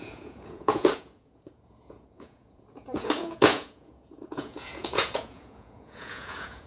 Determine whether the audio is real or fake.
fake